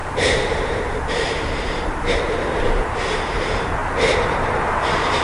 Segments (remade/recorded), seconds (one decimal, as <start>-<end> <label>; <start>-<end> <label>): 0.0-3.8 remade; 3.8-4.3 recorded; 4.3-5.2 remade